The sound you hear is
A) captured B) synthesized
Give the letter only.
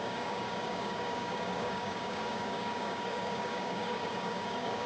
B